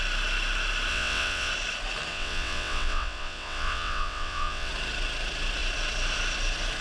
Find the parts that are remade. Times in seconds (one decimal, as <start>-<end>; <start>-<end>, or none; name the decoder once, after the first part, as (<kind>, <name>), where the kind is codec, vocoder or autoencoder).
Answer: 0.9-1.5 (vocoder, WaveNeXt); 2.1-4.7